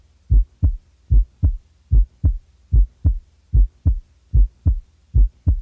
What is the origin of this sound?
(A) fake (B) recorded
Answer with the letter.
B